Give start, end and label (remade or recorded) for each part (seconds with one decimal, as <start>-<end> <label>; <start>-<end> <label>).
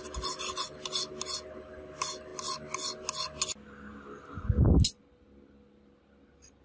0.0-6.6 recorded